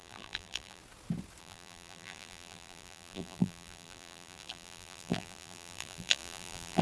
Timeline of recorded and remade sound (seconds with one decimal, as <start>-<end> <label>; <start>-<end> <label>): 0.0-0.8 remade; 0.8-1.4 recorded; 1.4-6.8 remade